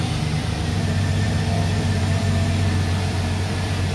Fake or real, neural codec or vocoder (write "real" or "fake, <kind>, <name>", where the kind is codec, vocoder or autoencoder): fake, vocoder, BigVGAN v2